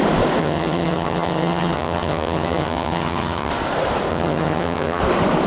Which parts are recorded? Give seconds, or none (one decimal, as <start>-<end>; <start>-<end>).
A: 0.0-0.4; 3.5-4.1; 5.0-5.5